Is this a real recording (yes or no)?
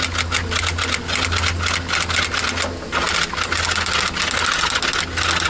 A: yes